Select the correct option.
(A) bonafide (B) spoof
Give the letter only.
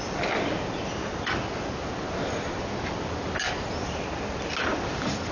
A